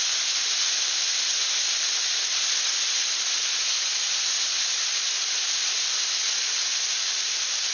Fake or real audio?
real